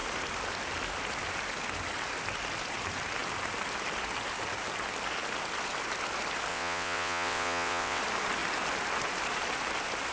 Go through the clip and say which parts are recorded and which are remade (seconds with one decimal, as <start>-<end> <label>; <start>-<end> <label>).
0.0-6.5 recorded; 6.5-8.0 remade; 8.0-10.1 recorded